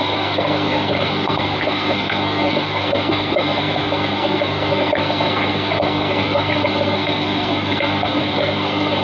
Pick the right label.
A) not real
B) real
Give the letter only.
A